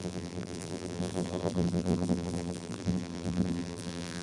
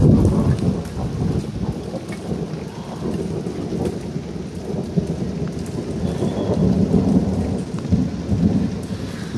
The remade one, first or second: first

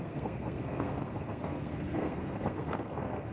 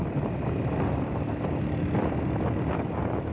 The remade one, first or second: first